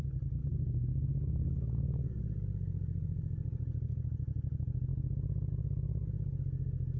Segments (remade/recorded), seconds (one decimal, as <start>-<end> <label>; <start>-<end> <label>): 0.0-0.4 recorded; 0.4-2.2 remade; 2.2-7.0 recorded